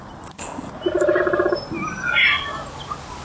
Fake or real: real